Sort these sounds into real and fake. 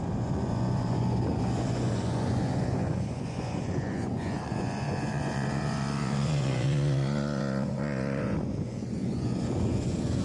fake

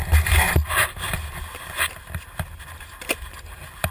real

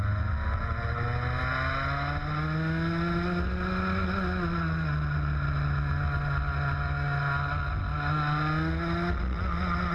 real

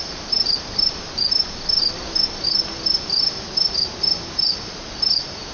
real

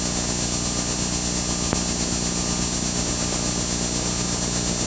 real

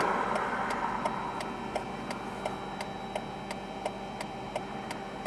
real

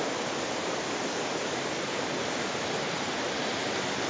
real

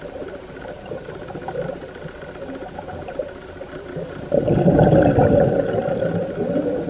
real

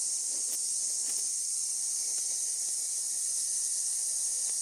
real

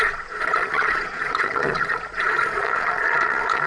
fake